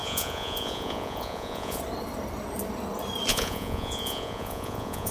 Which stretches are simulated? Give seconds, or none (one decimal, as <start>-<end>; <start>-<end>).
0.0-1.8; 3.3-5.1